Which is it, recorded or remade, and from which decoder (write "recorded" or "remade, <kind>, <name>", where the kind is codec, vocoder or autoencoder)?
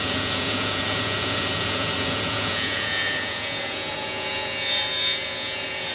remade, vocoder, Vocos